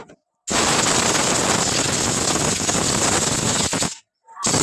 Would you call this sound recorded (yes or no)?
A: yes